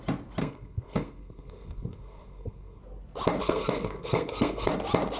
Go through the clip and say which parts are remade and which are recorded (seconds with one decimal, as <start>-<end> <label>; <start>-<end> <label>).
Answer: 0.0-0.4 recorded; 0.4-2.8 remade; 2.8-3.4 recorded; 3.4-4.7 remade; 4.7-5.2 recorded